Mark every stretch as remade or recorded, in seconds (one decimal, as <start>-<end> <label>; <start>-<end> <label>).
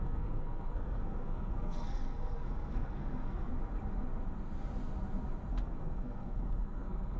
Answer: 0.0-3.5 remade; 3.5-5.5 recorded; 5.5-7.2 remade